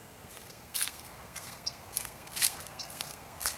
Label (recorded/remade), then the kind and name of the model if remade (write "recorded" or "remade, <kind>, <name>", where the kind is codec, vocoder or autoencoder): remade, codec, SNAC